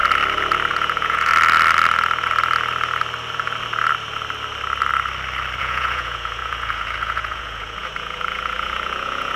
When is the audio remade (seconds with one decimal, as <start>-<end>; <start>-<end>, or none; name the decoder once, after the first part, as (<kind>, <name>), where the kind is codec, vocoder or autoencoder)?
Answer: 0.7-1.3 (vocoder, Vocos); 5.6-9.4